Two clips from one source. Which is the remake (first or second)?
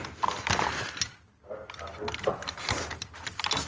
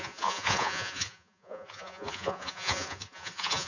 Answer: second